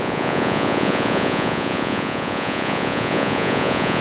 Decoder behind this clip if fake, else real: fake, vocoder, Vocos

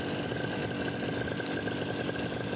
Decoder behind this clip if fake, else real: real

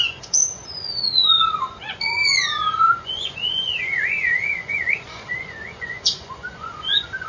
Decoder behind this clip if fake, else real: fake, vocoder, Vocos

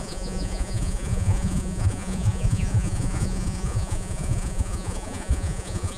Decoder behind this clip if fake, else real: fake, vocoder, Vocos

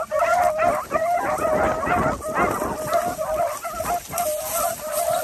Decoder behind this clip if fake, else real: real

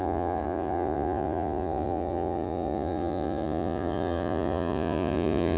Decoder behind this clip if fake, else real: fake, vocoder, Vocos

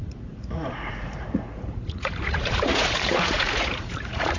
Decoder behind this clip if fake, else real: fake, vocoder, Vocos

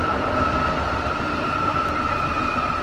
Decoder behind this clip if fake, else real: real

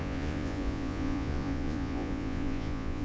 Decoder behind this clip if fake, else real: fake, vocoder, Vocos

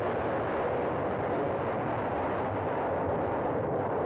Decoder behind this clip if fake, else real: real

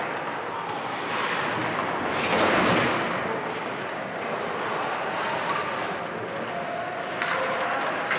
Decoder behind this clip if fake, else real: real